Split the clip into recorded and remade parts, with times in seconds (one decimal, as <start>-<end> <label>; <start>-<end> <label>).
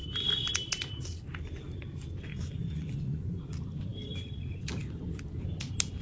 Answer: 0.0-2.3 recorded; 2.3-3.4 remade; 3.4-6.0 recorded